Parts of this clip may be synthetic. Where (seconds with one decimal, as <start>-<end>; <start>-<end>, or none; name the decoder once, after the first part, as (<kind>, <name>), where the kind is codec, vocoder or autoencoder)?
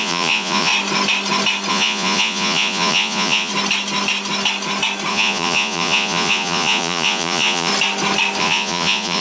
0.0-0.7 (vocoder, Vocos); 1.7-3.5; 5.1-7.7; 8.4-9.2